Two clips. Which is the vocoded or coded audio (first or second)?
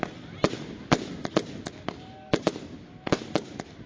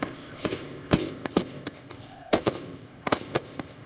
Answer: second